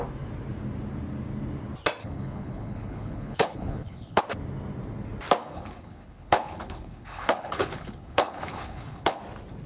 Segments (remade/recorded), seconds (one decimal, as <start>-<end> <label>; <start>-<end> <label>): 0.0-2.0 recorded; 2.0-4.2 remade; 4.2-5.4 recorded; 5.4-9.2 remade; 9.2-9.7 recorded